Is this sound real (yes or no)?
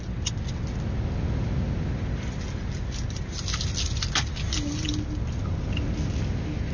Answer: yes